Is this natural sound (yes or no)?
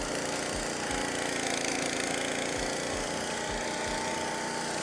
yes